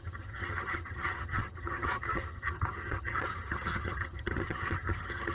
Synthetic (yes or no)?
yes